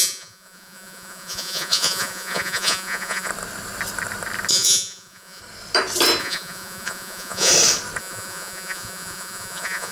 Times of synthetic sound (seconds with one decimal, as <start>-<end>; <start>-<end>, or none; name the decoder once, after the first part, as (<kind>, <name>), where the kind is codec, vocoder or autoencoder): 0.0-3.3 (vocoder, Vocos); 4.5-5.4; 6.2-7.5; 8.0-9.9